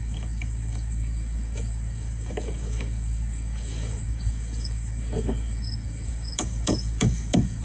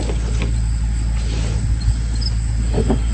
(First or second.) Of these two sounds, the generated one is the first